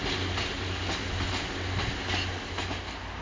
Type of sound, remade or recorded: recorded